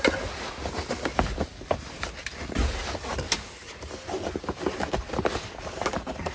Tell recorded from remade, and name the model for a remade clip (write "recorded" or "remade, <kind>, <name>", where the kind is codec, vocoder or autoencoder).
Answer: recorded